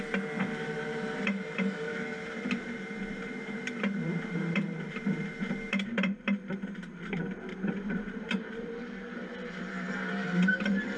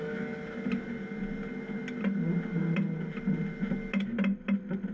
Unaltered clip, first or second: second